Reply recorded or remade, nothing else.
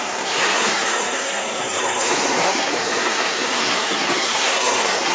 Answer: remade